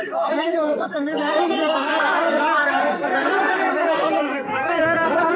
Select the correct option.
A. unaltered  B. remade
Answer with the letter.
B